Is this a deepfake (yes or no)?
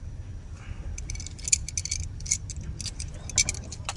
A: no